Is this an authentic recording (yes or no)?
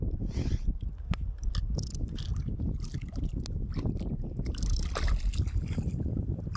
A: yes